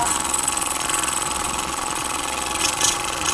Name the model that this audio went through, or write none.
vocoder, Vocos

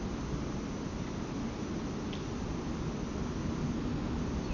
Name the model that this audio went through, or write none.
none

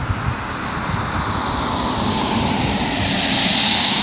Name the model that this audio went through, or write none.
none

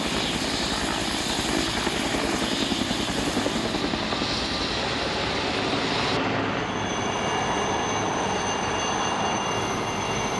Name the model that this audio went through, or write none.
none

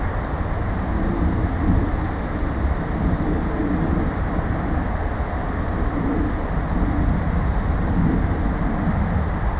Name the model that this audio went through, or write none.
none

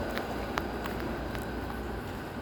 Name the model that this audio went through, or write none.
none